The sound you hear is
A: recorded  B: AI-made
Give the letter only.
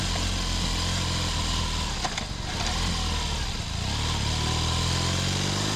A